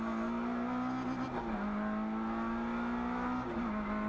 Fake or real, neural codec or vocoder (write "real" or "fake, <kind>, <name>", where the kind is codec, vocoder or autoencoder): real